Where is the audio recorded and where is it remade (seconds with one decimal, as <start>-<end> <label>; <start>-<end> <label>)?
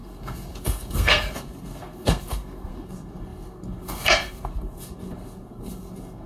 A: 0.0-6.3 remade